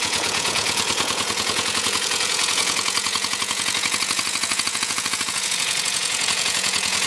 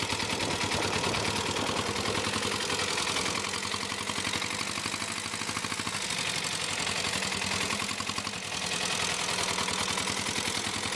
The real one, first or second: second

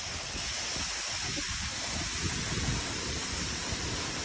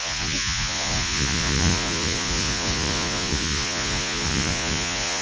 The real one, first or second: first